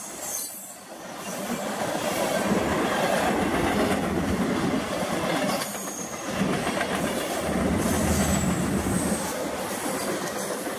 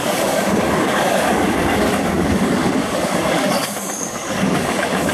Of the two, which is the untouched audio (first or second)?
first